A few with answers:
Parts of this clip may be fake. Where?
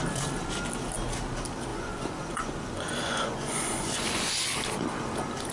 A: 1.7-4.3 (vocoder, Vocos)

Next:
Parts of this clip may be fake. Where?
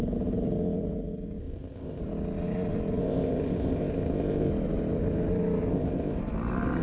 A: 1.4-2.0 (codec, ZipCodec); 3.0-4.5; 5.7-6.2